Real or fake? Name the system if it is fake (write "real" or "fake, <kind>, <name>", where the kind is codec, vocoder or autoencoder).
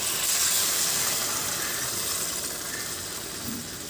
real